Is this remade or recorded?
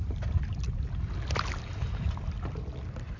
recorded